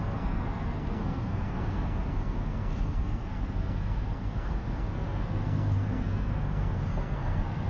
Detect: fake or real fake